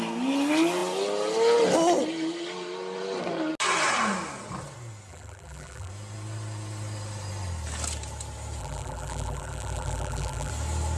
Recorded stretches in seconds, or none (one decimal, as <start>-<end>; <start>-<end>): 0.0-5.1; 5.9-8.6; 10.5-11.0